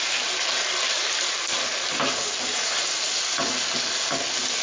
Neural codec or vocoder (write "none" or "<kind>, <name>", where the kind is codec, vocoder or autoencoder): none